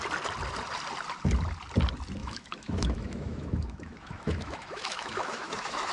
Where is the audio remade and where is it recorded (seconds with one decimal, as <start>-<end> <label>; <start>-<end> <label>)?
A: 0.0-2.2 recorded; 2.2-5.9 remade